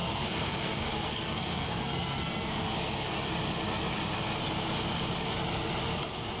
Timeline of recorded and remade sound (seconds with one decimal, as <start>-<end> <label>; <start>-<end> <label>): 0.0-3.3 remade; 3.3-6.4 recorded